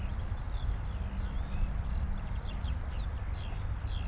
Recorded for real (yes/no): yes